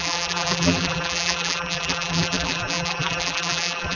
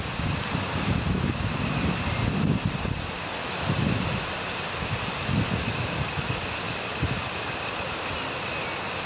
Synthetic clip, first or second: first